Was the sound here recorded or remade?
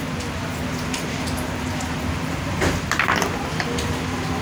recorded